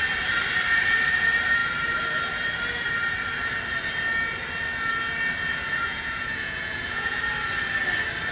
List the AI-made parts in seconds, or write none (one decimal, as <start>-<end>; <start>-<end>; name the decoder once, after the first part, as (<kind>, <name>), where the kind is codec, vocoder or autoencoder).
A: 5.5-7.2 (vocoder, Vocos)